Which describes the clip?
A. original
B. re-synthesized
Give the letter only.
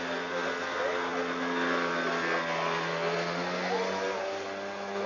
A